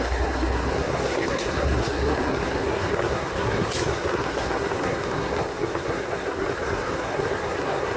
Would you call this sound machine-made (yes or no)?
yes